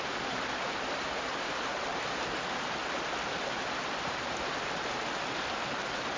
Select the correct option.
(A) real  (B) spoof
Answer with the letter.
A